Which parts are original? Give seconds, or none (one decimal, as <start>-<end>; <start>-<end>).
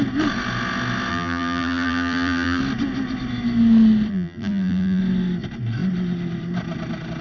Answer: 0.0-1.1; 2.6-4.1; 5.0-7.2